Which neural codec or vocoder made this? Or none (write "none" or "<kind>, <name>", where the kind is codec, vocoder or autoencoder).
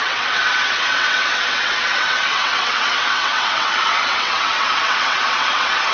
vocoder, WaveNeXt